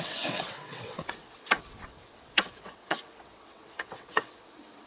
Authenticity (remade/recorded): remade